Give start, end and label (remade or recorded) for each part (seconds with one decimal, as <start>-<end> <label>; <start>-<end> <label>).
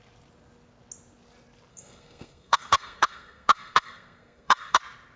0.0-1.7 recorded; 1.7-4.8 remade; 4.8-5.2 recorded